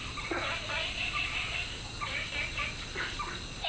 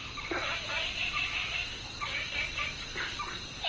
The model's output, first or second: second